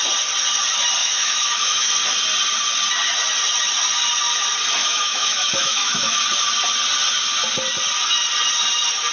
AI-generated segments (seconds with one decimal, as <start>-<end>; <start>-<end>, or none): 1.0-1.9; 4.8-6.2